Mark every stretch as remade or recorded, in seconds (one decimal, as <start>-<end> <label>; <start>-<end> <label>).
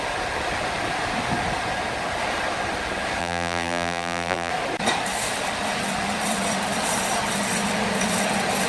0.0-3.2 recorded; 3.2-4.5 remade; 4.5-8.7 recorded